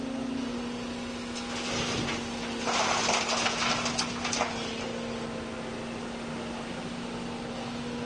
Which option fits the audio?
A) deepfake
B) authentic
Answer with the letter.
B